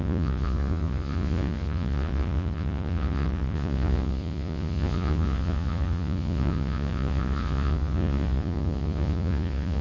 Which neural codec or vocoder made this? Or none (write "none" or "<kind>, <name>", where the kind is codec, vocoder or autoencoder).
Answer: vocoder, Vocos